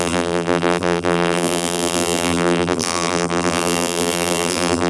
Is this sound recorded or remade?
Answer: remade